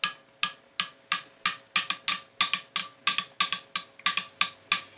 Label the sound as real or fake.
real